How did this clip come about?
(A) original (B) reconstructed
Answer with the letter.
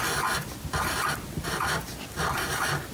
A